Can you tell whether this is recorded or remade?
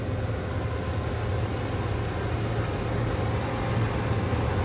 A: recorded